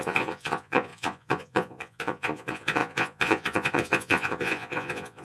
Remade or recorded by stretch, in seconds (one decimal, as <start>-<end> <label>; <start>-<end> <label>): 0.0-5.2 remade